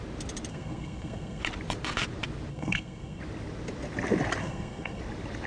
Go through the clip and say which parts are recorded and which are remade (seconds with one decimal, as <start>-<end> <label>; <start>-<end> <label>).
0.0-0.5 recorded; 0.5-1.4 remade; 1.4-2.5 recorded; 2.5-3.2 remade; 3.2-4.4 recorded; 4.4-5.0 remade; 5.0-5.5 recorded